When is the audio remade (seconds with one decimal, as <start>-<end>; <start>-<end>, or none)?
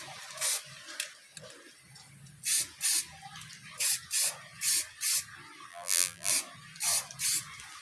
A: 5.7-6.3